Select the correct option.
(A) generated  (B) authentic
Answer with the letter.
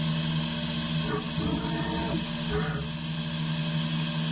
B